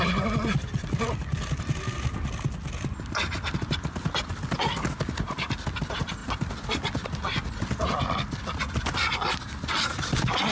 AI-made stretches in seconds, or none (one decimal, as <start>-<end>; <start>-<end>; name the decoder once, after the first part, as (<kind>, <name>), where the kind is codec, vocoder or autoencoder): none